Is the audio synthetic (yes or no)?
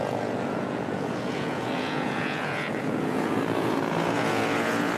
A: yes